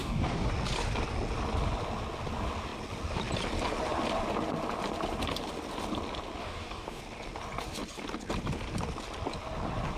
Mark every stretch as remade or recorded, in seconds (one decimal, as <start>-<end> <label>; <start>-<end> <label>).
0.0-0.5 remade; 0.5-6.4 recorded; 6.4-7.0 remade; 7.0-10.0 recorded